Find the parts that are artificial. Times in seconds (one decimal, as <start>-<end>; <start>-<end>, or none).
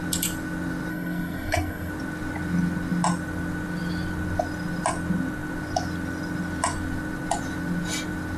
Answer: 0.9-1.9